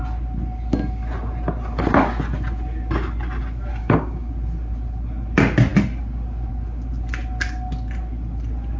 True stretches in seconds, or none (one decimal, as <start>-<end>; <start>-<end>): 0.0-3.8; 4.3-8.8